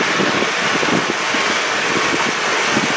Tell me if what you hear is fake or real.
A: real